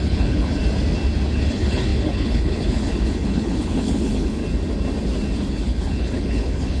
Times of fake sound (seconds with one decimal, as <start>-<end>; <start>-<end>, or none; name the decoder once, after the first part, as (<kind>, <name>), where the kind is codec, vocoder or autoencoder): 0.0-0.6 (codec, HILCodec); 1.3-4.4; 5.5-6.8